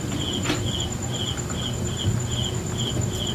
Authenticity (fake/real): real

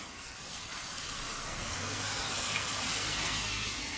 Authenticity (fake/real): fake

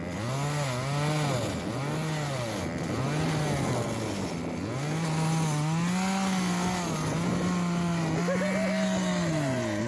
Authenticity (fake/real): real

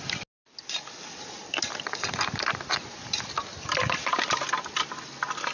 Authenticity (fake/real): real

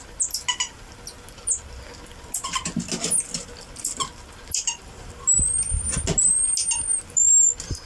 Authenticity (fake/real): real